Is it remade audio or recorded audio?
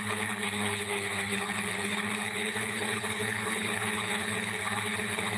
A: remade